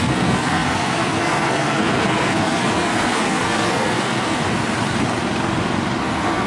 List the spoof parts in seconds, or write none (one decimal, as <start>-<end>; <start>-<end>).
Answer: 0.0-4.4; 6.0-6.5